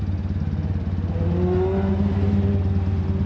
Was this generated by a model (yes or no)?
no